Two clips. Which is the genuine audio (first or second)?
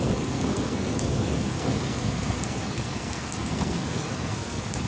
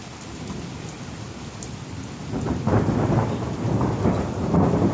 second